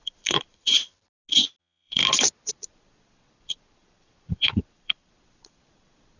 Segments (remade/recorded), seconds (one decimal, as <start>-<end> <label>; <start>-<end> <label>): 0.0-0.8 remade; 0.8-1.6 recorded; 1.6-2.0 remade; 2.0-2.5 recorded; 2.5-6.2 remade